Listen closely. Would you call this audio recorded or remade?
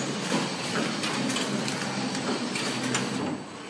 recorded